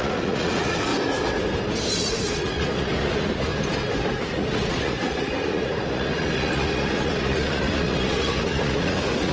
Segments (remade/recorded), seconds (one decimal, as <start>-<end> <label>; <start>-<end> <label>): 0.0-0.9 remade; 0.9-2.0 recorded; 2.0-3.5 remade; 3.5-4.2 recorded; 4.2-9.3 remade